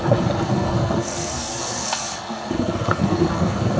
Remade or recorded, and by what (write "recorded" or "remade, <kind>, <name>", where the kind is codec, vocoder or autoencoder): remade, codec, SNAC